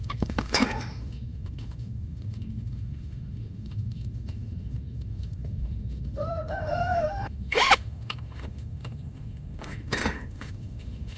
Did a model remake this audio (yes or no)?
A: yes